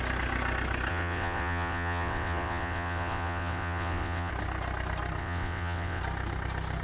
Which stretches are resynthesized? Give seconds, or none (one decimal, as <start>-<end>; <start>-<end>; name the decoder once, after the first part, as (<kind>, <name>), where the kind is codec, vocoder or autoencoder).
0.9-4.3 (vocoder, WaveNeXt); 5.2-6.0

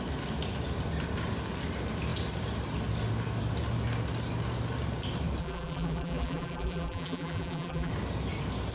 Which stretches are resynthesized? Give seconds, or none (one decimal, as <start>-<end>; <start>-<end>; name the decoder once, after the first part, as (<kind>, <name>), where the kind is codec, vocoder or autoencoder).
5.4-7.9 (vocoder, BigVGAN v2)

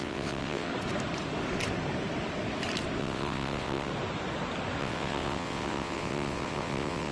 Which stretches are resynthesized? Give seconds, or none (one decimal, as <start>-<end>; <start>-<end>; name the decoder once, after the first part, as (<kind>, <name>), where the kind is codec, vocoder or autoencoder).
0.0-0.7 (vocoder, WaveNeXt); 3.0-3.9; 4.8-7.1

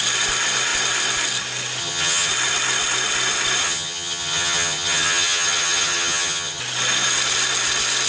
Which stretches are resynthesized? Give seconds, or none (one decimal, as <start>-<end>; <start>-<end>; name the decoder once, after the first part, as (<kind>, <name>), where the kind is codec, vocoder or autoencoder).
1.8-2.3 (vocoder, HiFi-GAN); 3.6-6.6

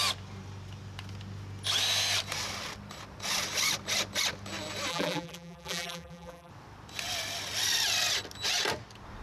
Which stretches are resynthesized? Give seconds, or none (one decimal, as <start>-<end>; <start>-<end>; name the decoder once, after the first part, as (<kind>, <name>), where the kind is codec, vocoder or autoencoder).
4.9-6.5 (vocoder, BigVGAN v2)

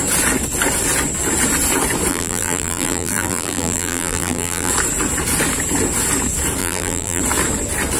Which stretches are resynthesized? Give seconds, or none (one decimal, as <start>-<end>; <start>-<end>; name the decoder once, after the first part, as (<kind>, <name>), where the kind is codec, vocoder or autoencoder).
2.1-4.7 (vocoder, BigVGAN v2); 6.6-7.2